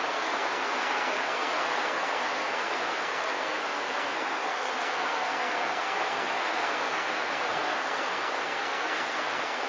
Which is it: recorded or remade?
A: remade